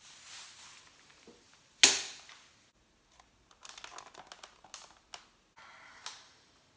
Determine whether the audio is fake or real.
real